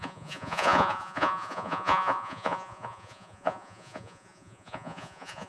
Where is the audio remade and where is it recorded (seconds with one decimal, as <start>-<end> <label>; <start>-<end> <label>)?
0.0-5.5 remade